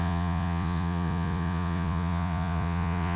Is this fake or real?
fake